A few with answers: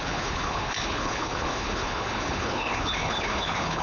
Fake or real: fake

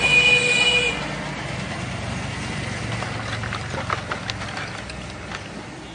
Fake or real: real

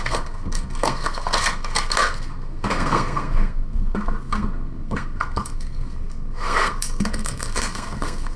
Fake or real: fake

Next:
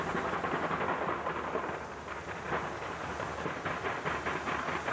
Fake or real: real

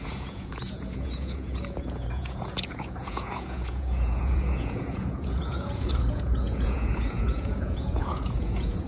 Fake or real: fake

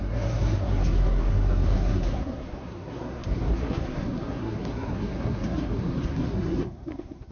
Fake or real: fake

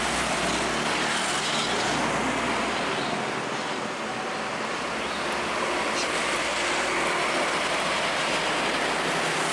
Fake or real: real